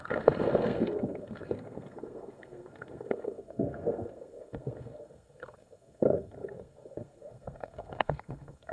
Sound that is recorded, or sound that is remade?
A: remade